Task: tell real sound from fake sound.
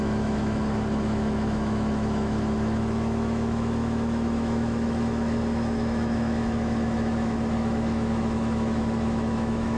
fake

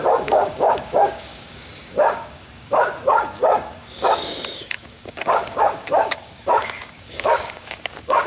fake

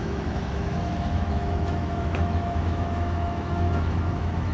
fake